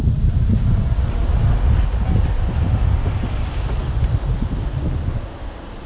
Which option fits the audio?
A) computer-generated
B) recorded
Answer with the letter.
B